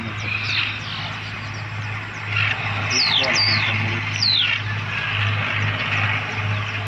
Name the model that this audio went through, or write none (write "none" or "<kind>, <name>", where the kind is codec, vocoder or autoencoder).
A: none